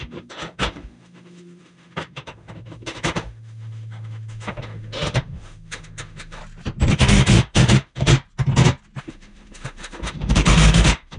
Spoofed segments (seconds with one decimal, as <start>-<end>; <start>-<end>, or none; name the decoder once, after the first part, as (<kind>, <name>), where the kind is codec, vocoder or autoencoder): 0.0-6.4 (autoencoder, DAC-VAE); 6.9-8.1; 9.0-11.2